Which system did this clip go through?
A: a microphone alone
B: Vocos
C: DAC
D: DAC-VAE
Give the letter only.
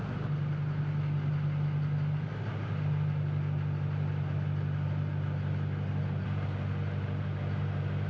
A